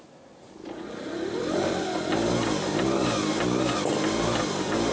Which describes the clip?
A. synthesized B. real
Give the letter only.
B